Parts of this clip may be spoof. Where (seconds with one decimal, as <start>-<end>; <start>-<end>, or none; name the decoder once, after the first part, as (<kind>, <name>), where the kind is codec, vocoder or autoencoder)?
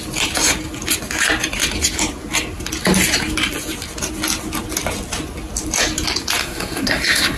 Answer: 6.4-7.4 (codec, SNAC)